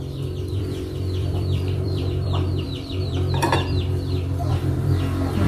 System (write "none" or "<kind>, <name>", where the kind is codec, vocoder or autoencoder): vocoder, BigVGAN v2